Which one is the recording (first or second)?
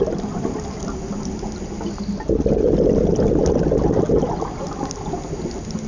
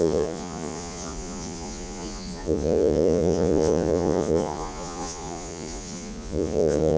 first